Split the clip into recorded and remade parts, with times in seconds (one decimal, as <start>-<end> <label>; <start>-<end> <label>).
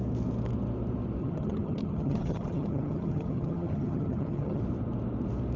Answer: 0.0-1.2 recorded; 1.2-4.6 remade; 4.6-5.6 recorded